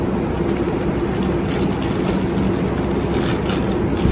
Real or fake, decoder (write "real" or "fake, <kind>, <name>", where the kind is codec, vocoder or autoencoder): real